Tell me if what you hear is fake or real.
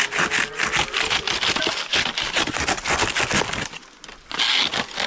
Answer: real